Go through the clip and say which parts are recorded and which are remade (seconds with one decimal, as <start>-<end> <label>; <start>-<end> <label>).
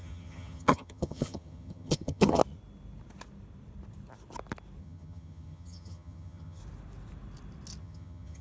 0.0-2.4 remade; 2.4-4.8 recorded; 4.8-6.6 remade; 6.6-7.8 recorded; 7.8-8.4 remade